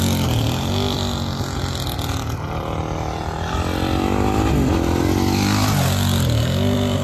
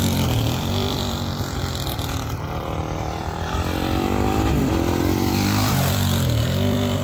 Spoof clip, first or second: second